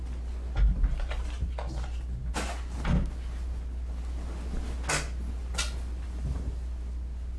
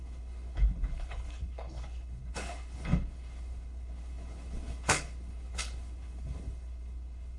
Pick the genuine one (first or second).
first